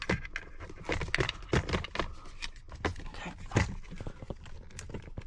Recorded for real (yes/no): yes